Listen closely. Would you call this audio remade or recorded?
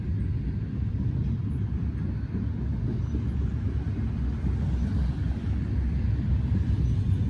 recorded